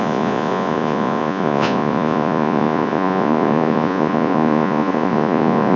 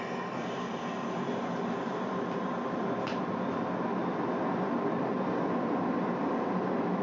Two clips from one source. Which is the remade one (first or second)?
first